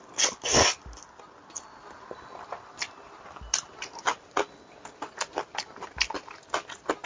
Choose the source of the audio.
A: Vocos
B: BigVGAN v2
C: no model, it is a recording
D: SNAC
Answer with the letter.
C